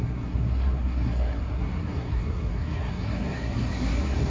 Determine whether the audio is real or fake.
fake